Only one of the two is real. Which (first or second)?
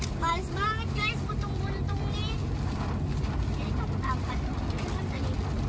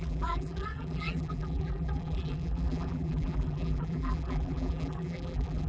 first